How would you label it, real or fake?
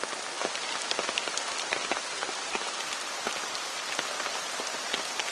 real